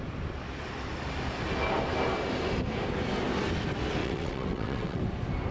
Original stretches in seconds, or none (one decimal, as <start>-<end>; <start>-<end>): 0.0-4.0; 5.0-5.5